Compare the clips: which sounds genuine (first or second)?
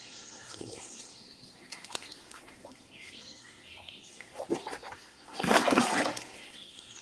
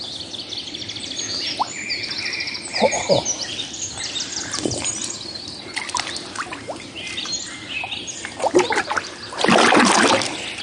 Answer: second